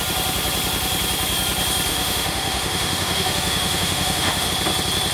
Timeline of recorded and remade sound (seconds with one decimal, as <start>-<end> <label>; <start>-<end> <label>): 0.0-1.9 recorded; 1.9-4.5 remade; 4.5-5.1 recorded